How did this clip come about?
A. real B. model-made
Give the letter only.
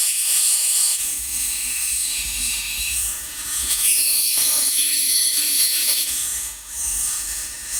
B